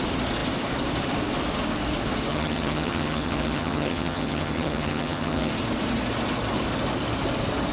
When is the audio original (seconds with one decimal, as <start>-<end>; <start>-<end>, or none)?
0.0-2.3; 5.5-7.7